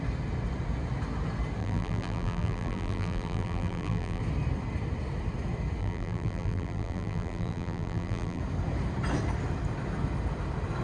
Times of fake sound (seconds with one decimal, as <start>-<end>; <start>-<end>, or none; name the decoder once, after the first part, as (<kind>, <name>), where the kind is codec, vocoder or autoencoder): 1.6-4.2 (vocoder, BigVGAN v2); 5.8-8.4